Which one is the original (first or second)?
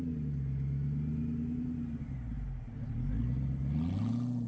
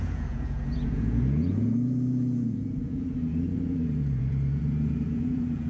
first